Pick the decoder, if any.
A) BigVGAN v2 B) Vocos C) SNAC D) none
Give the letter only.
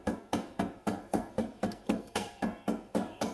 C